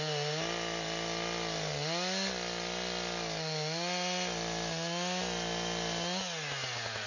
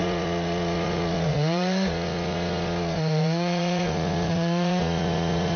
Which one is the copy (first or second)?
second